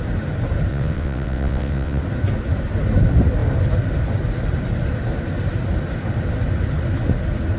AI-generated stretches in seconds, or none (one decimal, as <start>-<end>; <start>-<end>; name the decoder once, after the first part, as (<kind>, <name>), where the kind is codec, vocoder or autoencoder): 0.7-2.0 (vocoder, WaveNeXt)